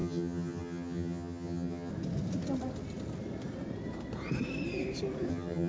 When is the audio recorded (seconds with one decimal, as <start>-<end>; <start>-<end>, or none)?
1.9-5.3